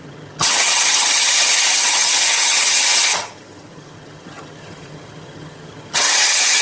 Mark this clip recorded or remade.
remade